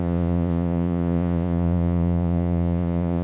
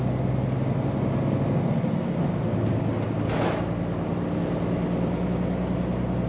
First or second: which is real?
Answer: second